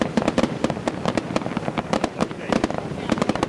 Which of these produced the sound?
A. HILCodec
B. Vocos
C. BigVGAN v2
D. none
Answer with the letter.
C